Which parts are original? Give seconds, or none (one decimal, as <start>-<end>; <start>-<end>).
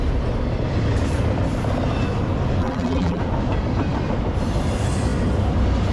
0.0-2.6; 3.2-5.9